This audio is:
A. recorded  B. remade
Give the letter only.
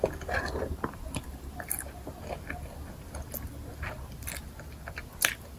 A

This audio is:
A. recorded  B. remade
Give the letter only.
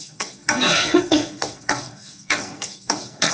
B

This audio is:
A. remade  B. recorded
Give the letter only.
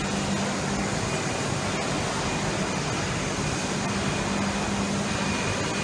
B